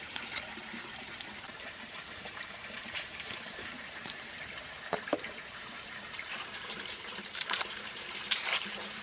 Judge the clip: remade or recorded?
remade